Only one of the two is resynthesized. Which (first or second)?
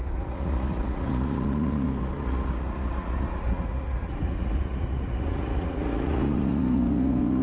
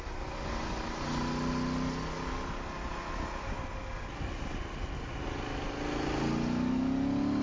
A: first